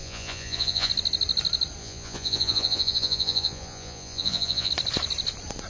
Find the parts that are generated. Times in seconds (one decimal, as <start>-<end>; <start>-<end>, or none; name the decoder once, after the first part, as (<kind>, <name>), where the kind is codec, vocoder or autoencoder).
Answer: 0.0-0.9 (vocoder, Vocos); 1.8-4.7